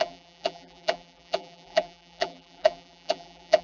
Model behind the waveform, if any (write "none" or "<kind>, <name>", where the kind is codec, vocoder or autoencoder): vocoder, BigVGAN v2